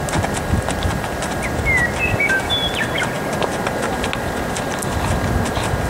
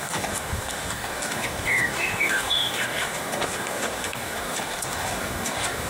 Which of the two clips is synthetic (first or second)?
second